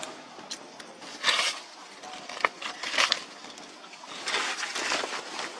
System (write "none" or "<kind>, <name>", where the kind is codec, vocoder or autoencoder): none